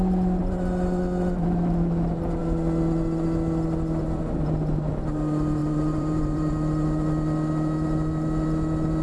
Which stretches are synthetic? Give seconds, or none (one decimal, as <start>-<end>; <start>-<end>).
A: 5.6-6.5